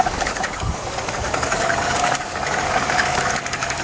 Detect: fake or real fake